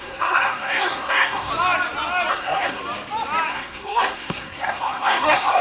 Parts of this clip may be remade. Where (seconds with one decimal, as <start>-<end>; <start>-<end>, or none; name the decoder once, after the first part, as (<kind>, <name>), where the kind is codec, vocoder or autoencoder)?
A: 0.0-1.5 (codec, SNAC); 2.3-2.8; 3.5-5.6